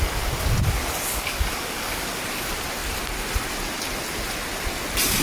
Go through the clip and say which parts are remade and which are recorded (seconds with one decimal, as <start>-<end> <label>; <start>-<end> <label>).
0.0-1.1 recorded; 1.1-2.2 remade; 2.2-5.2 recorded